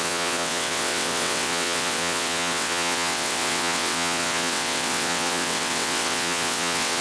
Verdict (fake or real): fake